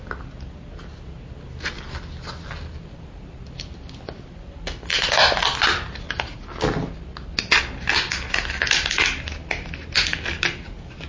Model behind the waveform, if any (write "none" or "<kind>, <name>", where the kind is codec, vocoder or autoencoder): none